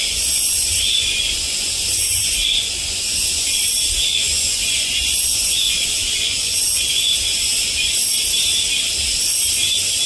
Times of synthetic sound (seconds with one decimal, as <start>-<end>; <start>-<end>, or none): 0.0-3.6; 4.1-8.0